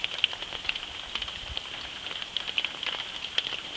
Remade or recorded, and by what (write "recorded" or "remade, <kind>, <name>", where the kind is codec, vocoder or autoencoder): recorded